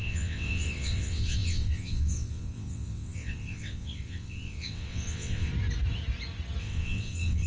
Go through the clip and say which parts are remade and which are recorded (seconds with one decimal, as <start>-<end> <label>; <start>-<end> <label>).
0.0-5.5 remade; 5.5-6.6 recorded; 6.6-7.5 remade